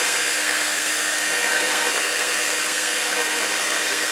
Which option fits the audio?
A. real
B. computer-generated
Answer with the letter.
B